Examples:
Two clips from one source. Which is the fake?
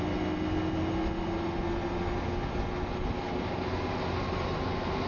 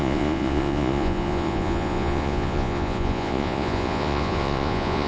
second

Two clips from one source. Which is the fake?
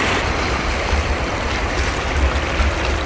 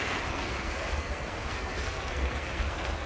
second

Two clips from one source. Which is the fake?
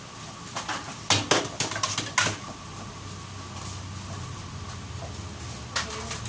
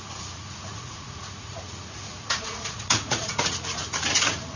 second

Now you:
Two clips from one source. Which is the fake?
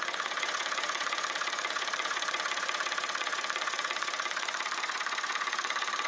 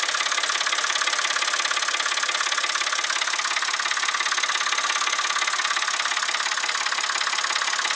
first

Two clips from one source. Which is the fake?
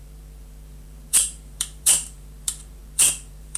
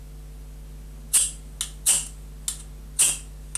first